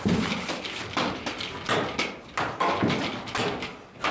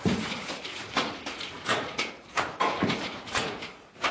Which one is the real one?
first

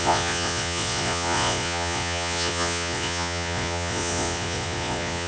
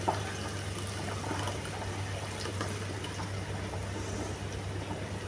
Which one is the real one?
second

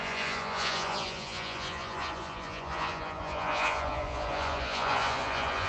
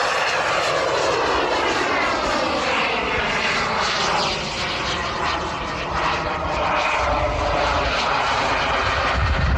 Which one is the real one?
second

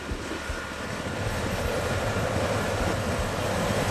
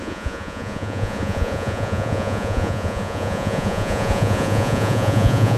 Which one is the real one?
first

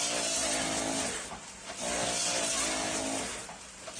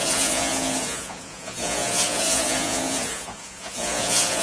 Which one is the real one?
first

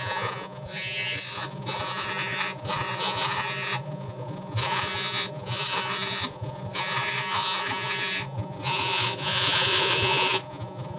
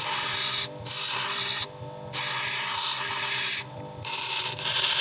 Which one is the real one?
second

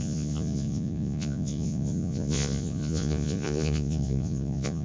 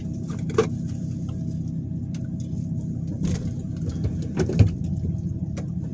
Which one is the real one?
second